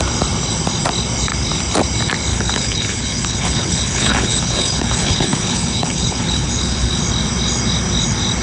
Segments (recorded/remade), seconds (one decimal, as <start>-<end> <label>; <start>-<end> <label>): 0.0-2.3 recorded; 2.3-7.0 remade; 7.0-8.4 recorded